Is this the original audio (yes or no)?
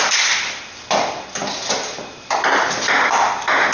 yes